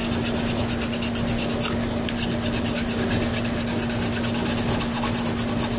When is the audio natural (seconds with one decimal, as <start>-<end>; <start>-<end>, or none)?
0.0-5.8